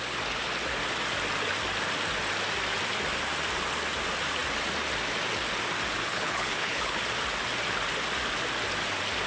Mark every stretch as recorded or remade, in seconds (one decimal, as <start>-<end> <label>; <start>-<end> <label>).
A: 0.0-6.1 recorded; 6.1-7.0 remade; 7.0-9.3 recorded